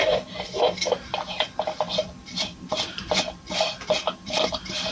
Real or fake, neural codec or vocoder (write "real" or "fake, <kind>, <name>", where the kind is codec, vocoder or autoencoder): fake, vocoder, BigVGAN v2